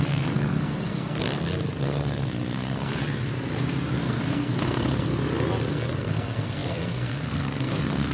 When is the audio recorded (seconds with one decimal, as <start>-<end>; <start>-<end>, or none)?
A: 1.2-1.8; 3.0-4.0; 5.1-5.7